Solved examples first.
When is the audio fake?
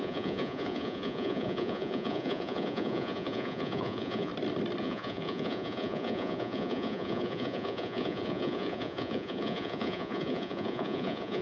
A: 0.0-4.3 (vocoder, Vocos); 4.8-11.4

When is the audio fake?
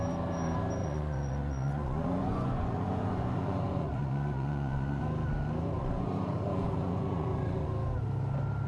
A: 0.8-5.0 (vocoder, Vocos); 5.8-7.7